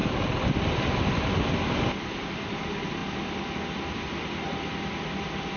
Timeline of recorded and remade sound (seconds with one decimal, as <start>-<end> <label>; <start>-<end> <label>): 0.0-5.6 recorded

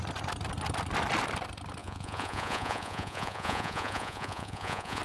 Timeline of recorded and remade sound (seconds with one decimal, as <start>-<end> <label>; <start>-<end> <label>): 0.0-1.8 recorded; 1.8-5.0 remade

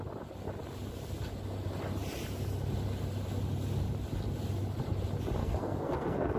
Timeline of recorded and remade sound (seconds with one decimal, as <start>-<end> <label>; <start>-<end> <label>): 0.0-5.4 recorded; 5.4-6.4 remade

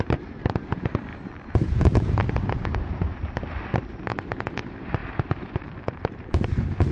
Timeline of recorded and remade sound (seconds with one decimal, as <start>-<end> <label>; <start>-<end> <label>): 0.0-6.9 remade